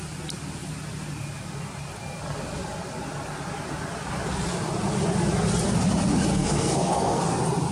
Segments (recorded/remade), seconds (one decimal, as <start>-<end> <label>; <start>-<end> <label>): 0.0-6.3 recorded; 6.3-7.2 remade; 7.2-7.7 recorded